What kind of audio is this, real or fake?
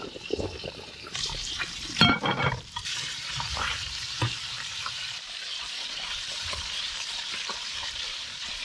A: fake